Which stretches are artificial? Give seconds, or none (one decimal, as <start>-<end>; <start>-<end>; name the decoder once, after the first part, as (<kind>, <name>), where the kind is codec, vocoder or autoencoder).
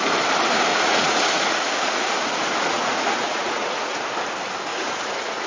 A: 0.7-4.0 (vocoder, Vocos); 4.7-5.5